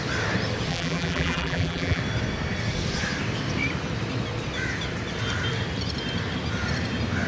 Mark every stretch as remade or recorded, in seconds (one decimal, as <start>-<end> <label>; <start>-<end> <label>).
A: 0.0-0.7 recorded; 0.7-2.0 remade; 2.0-7.3 recorded